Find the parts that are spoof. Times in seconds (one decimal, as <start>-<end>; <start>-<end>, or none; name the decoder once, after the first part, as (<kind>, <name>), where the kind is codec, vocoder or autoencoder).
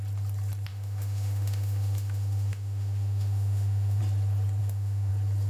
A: 0.7-4.0 (autoencoder, DAC-VAE); 4.6-5.1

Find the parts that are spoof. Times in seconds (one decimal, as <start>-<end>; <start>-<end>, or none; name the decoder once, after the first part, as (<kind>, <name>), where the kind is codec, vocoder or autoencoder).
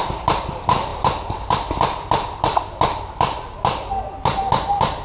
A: none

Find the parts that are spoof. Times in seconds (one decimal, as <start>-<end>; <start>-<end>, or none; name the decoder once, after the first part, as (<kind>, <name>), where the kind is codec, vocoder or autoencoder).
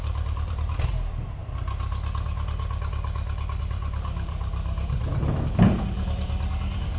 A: 0.0-1.4 (vocoder, BigVGAN v2); 3.6-7.0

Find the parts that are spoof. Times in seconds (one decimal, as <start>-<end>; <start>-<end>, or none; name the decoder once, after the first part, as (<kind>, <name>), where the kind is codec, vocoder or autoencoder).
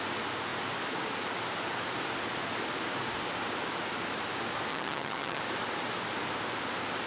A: 4.7-5.4 (vocoder, HiFi-GAN)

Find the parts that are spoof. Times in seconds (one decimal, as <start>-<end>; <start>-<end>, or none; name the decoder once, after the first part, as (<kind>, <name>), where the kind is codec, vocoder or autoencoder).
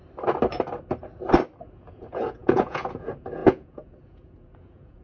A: 1.6-5.0 (vocoder, Vocos)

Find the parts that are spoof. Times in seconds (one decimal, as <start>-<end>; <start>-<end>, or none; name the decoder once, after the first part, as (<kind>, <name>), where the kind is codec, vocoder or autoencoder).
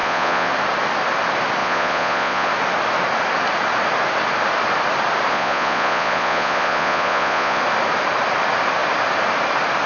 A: 0.0-0.5 (vocoder, Vocos); 1.6-2.5; 5.3-7.6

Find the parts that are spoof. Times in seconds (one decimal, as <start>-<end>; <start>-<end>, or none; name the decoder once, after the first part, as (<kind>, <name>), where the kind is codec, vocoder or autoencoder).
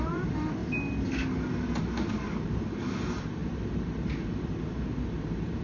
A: 0.0-0.6 (vocoder, BigVGAN v2); 1.8-5.6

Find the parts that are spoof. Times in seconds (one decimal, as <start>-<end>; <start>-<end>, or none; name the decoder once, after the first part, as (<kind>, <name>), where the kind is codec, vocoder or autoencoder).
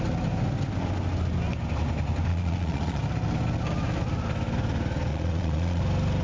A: 2.3-3.0 (vocoder, Vocos); 5.1-5.8